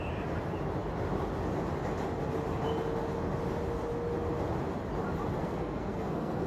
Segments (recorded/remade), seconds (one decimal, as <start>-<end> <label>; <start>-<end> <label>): 0.0-5.4 recorded; 5.4-6.5 remade